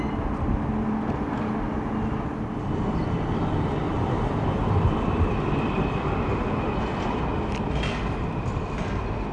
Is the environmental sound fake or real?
real